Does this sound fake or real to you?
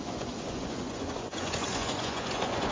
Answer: fake